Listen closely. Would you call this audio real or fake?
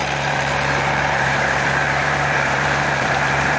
fake